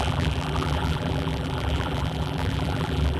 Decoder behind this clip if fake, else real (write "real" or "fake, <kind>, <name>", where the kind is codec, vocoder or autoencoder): fake, vocoder, BigVGAN v2